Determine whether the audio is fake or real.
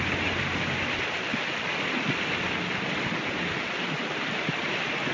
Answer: real